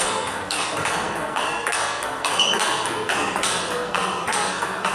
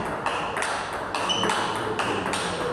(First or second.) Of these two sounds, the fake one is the first